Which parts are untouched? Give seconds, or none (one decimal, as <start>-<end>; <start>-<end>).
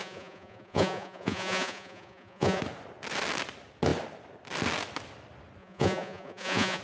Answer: 2.6-5.6